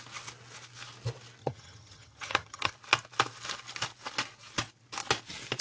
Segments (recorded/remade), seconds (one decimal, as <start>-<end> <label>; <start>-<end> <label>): 0.0-1.4 recorded; 1.4-2.7 remade; 2.7-5.6 recorded